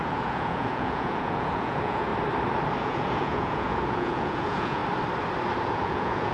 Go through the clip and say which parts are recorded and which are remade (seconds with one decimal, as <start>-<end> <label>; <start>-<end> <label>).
0.0-2.1 remade; 2.1-2.8 recorded; 2.8-4.8 remade; 4.8-5.6 recorded; 5.6-6.3 remade